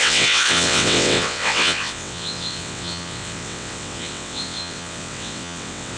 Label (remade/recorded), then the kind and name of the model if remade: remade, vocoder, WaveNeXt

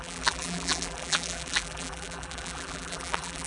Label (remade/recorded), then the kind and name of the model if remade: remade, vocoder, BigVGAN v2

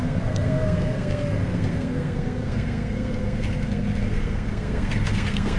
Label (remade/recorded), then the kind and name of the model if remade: remade, codec, SNAC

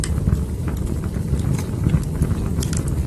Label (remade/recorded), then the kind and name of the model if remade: recorded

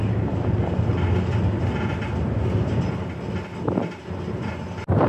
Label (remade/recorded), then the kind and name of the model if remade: recorded